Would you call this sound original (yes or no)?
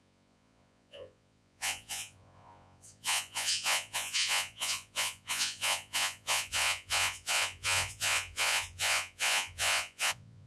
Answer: no